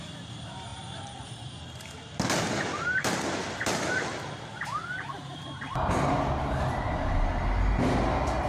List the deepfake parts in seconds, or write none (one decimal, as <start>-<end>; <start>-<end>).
0.7-1.5